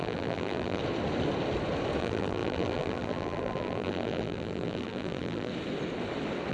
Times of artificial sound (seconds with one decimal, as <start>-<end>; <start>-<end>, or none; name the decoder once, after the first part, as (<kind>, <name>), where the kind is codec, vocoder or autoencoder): 0.0-0.8 (vocoder, BigVGAN v2); 2.0-5.5